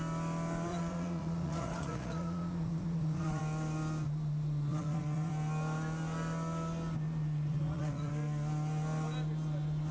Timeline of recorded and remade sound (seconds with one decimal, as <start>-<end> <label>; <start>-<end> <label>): 0.0-0.7 recorded; 0.7-3.4 remade; 3.4-4.7 recorded; 4.7-5.3 remade; 5.3-7.5 recorded; 7.5-8.1 remade; 8.1-9.9 recorded